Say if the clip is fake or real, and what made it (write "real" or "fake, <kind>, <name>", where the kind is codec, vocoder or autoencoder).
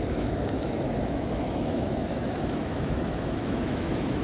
fake, autoencoder, DAC-VAE